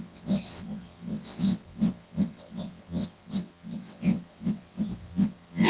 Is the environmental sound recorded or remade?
remade